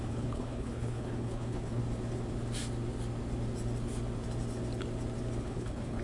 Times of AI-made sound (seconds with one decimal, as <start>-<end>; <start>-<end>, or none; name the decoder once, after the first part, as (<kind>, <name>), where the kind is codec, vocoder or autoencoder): 0.0-1.8 (codec, HILCodec); 5.4-6.0